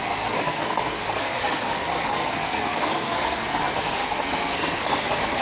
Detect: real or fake fake